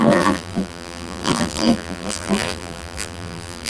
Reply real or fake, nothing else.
fake